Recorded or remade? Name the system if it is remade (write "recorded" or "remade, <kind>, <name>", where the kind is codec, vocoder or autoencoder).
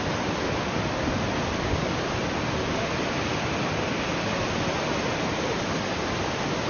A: recorded